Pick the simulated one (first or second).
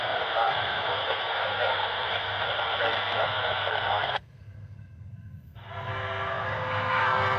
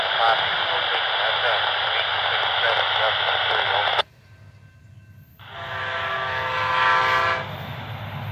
first